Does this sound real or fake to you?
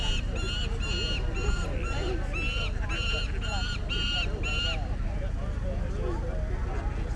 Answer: real